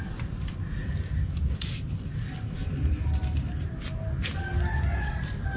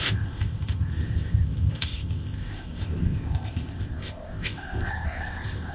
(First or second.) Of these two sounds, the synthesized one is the second